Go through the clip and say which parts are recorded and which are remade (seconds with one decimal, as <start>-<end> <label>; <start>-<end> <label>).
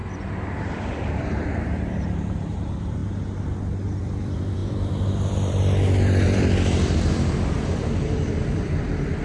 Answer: 0.0-0.6 recorded; 0.6-3.0 remade; 3.0-4.0 recorded; 4.0-9.2 remade